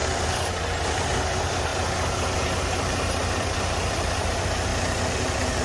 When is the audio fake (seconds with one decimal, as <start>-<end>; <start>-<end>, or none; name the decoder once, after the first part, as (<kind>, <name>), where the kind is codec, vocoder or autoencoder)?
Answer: 0.9-1.7 (vocoder, BigVGAN v2); 2.3-4.7